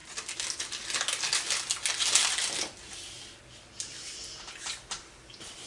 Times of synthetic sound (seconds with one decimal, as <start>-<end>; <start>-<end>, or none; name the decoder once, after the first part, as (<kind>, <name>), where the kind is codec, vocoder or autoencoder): none